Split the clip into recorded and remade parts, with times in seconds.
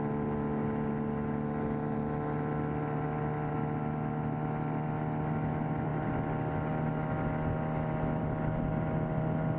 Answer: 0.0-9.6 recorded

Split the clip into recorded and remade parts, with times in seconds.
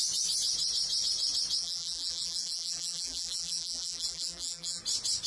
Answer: 0.0-1.6 recorded; 1.6-4.8 remade; 4.8-5.3 recorded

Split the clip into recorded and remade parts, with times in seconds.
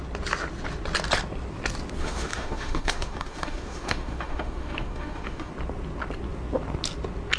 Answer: 0.0-2.0 recorded; 2.0-5.5 remade; 5.5-7.4 recorded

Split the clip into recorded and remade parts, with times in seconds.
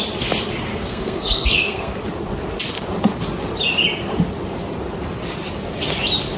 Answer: 0.0-0.7 recorded; 0.7-2.0 remade; 2.0-6.4 recorded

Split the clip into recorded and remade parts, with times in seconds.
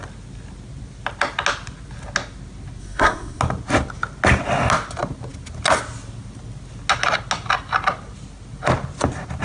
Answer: 0.0-2.8 recorded; 2.8-3.4 remade; 3.4-9.4 recorded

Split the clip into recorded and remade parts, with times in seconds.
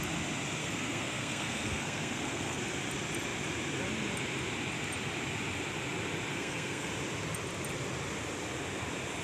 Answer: 0.0-0.6 recorded; 0.6-2.6 remade; 2.6-6.3 recorded; 6.3-6.9 remade; 6.9-9.2 recorded